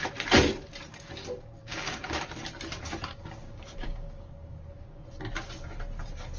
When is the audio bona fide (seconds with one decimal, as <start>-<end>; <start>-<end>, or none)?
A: 0.0-1.6; 2.1-3.1; 5.0-6.4